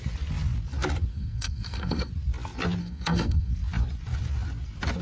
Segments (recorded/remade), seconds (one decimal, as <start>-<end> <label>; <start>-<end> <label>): 0.0-1.1 recorded; 1.1-2.1 remade; 2.1-2.8 recorded; 2.8-3.5 remade; 3.5-5.0 recorded